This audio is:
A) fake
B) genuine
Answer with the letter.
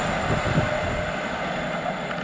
B